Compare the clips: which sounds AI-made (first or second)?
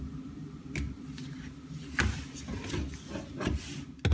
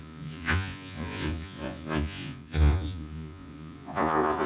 second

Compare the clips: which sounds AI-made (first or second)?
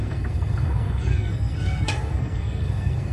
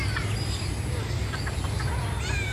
first